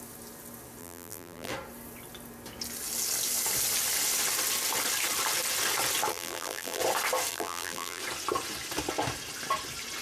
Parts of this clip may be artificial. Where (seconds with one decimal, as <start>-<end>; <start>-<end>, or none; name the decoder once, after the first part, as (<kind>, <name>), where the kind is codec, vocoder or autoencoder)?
0.8-1.5 (vocoder, BigVGAN v2); 6.1-6.8; 7.3-8.0